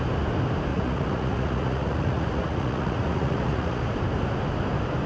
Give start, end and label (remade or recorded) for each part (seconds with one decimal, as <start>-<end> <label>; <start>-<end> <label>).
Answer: 0.0-0.7 recorded; 0.7-3.8 remade; 3.8-5.1 recorded

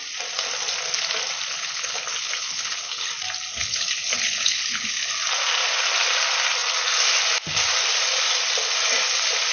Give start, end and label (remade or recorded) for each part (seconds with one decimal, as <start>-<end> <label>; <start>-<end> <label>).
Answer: 0.0-1.5 recorded; 1.5-3.1 remade; 3.1-3.5 recorded; 3.5-5.1 remade; 5.1-9.5 recorded

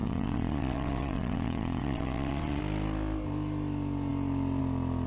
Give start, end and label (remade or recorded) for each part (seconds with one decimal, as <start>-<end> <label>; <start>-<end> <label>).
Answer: 0.0-2.6 remade; 2.6-5.1 recorded

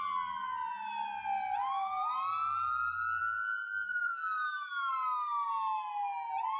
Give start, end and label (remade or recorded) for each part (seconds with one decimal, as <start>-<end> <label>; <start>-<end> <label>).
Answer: 0.0-3.8 recorded; 3.8-4.9 remade; 4.9-6.6 recorded

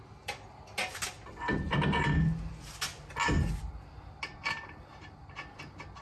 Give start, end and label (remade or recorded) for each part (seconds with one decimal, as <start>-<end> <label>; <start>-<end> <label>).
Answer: 0.0-6.0 recorded

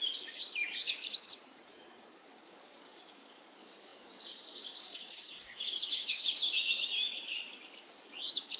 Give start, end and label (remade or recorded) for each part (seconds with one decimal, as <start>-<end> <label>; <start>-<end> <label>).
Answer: 0.0-8.6 remade